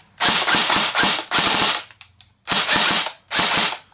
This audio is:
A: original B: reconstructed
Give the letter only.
B